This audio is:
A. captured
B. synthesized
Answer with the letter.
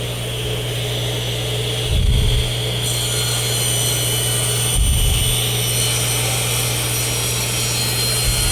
A